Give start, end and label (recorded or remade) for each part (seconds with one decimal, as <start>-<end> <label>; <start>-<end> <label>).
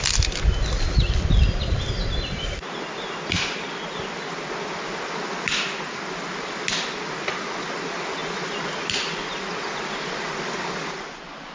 0.0-11.5 recorded